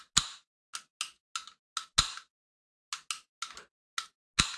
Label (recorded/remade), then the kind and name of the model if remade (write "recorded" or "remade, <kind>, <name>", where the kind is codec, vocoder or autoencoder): recorded